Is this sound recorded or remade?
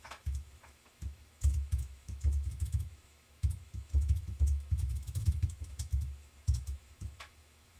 remade